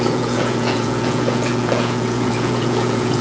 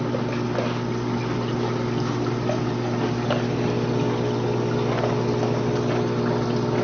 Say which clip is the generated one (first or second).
first